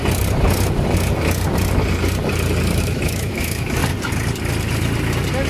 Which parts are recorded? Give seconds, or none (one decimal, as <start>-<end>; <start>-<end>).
0.0-2.8; 3.8-5.5